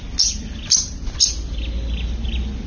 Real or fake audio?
real